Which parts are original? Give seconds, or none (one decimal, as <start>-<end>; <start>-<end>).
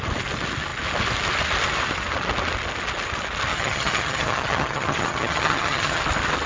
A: 0.0-3.5; 6.0-6.5